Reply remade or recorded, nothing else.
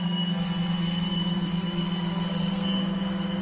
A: remade